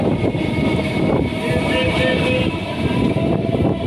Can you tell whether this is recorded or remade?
recorded